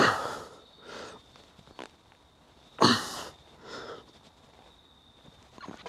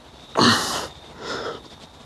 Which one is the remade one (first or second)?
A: second